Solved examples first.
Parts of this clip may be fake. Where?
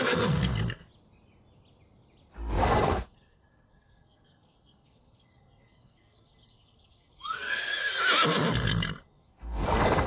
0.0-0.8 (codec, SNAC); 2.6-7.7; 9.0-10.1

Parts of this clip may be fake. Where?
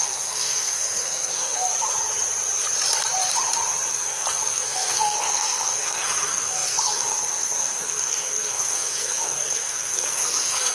0.0-1.7 (codec, SNAC); 3.9-10.7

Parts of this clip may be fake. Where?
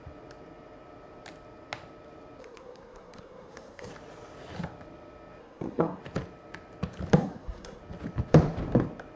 2.4-3.9 (codec, SNAC); 5.4-6.0; 7.2-7.8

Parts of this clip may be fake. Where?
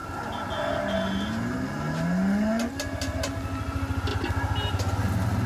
none